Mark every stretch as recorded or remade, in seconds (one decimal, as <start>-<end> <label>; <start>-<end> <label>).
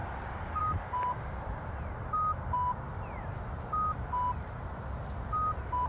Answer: 0.0-5.9 recorded